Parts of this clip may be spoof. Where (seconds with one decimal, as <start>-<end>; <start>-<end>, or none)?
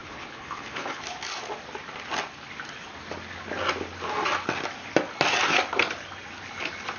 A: 0.0-1.0